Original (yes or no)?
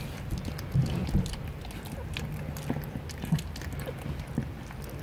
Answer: yes